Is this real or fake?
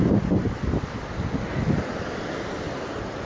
real